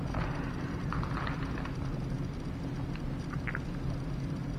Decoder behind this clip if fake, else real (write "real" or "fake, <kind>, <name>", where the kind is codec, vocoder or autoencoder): real